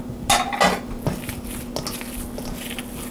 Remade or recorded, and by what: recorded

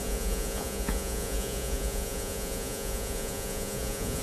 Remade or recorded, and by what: remade, vocoder, Vocos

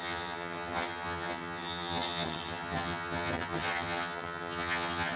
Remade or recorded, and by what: remade, vocoder, HiFi-GAN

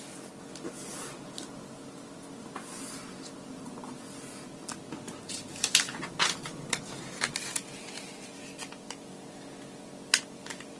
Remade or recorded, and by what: recorded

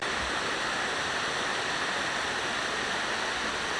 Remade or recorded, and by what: recorded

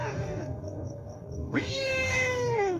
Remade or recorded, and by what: remade, codec, DAC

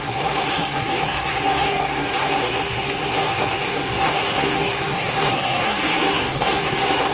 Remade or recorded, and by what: remade, codec, SNAC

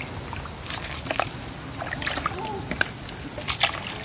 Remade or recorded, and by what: recorded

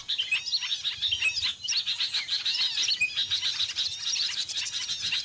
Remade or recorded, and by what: remade, vocoder, BigVGAN v2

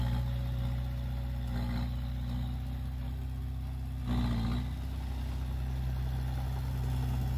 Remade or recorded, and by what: recorded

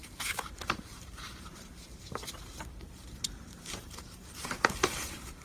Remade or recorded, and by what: remade, vocoder, BigVGAN v2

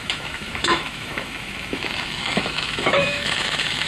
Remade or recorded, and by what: remade, autoencoder, DAC-VAE